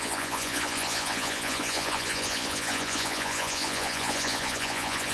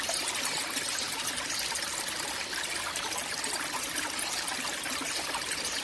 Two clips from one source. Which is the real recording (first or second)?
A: second